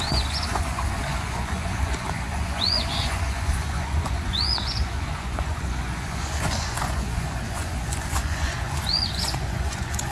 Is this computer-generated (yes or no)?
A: yes